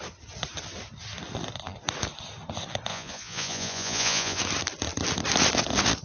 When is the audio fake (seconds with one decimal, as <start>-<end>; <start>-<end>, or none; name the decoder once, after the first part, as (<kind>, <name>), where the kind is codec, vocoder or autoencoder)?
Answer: 2.9-4.4 (vocoder, Vocos)